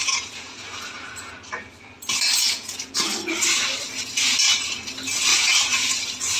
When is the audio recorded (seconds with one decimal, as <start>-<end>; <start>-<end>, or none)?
1.3-2.4; 3.0-5.3; 6.0-6.4